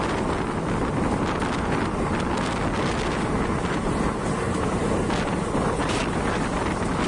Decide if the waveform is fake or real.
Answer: real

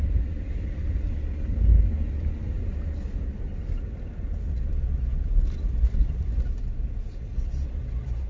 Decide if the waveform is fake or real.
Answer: real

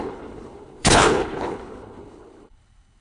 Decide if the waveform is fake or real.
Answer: fake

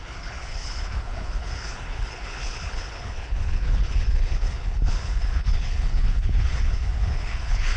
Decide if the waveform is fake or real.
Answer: fake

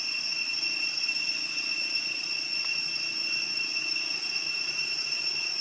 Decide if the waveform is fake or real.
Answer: real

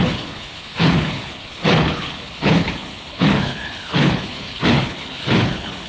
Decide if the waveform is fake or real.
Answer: fake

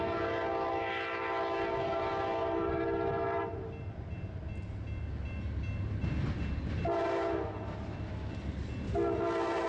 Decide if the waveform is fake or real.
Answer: real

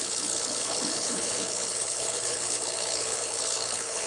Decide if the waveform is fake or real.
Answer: fake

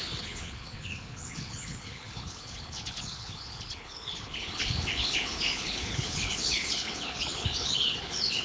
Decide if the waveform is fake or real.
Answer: fake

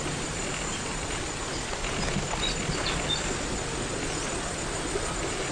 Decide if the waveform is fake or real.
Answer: real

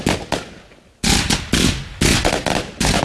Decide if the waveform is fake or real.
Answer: real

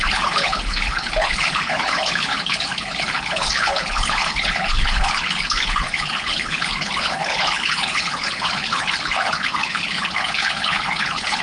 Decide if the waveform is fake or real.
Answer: fake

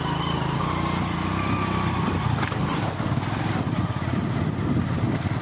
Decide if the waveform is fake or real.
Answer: real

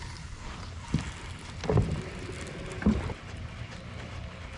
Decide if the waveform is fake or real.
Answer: real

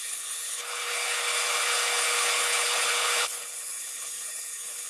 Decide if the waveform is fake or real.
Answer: fake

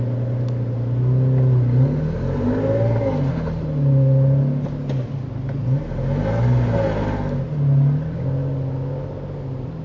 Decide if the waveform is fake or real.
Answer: real